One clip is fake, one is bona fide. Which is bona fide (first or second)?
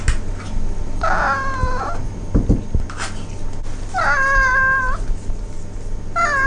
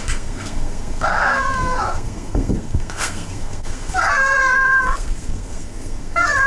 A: first